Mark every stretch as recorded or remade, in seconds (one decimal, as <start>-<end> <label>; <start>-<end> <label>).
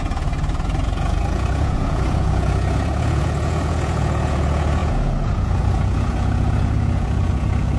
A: 0.0-7.8 remade